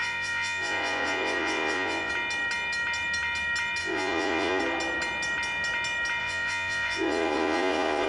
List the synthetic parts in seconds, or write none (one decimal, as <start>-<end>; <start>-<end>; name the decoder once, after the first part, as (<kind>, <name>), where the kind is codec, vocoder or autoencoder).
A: 0.0-2.1 (vocoder, Vocos); 3.8-4.6; 6.2-8.1